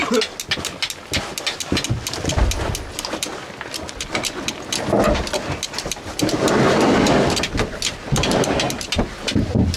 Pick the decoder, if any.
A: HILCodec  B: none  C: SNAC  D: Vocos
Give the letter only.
B